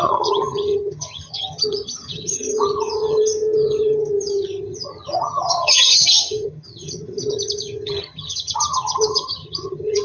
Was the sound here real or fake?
fake